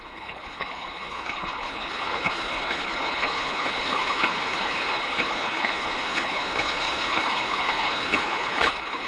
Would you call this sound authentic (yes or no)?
no